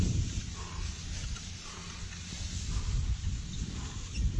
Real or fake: real